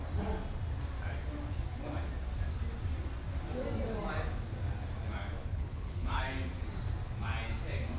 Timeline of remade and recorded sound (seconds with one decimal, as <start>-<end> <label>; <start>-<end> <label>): 0.0-5.4 recorded; 5.4-6.2 remade; 6.2-8.0 recorded